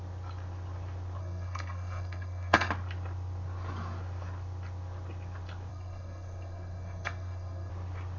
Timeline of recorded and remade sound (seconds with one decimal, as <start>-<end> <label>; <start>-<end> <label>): 0.0-1.2 recorded; 1.2-2.7 remade; 2.7-5.7 recorded; 5.7-7.7 remade; 7.7-8.2 recorded